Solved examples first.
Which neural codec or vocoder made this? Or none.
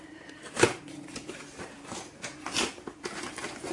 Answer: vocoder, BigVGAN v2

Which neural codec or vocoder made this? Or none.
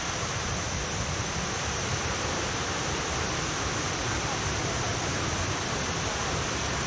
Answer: vocoder, BigVGAN v2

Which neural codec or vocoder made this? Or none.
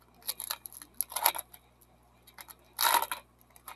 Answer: none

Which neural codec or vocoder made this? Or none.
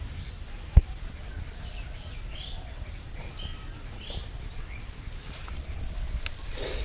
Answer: none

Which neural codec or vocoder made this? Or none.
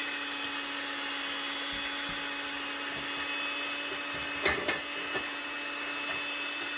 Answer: none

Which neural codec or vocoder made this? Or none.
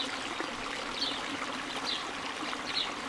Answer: none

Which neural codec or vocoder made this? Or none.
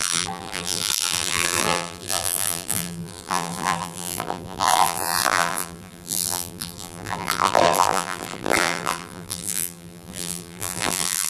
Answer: vocoder, BigVGAN v2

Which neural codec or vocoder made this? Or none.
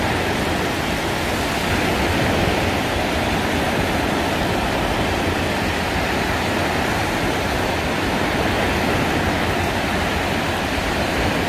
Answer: none